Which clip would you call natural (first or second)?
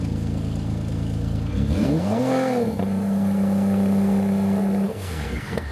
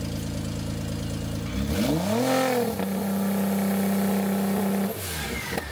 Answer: second